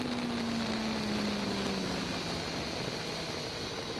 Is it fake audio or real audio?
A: real